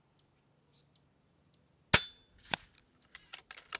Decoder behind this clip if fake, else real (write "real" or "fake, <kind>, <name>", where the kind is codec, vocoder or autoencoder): real